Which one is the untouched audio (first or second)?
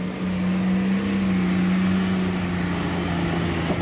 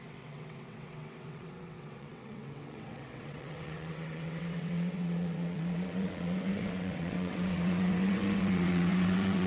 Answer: first